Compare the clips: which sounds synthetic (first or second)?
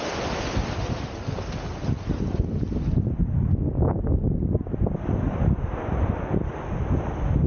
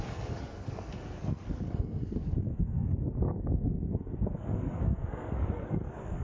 second